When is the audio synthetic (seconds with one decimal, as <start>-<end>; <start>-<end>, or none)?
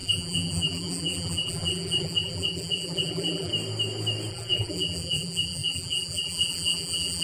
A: 0.0-3.5; 4.3-7.2